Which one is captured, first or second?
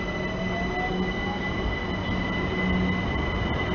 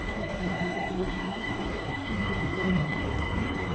first